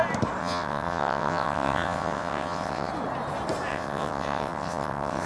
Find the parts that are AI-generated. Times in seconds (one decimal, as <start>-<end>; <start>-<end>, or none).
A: 0.4-2.9; 3.7-5.3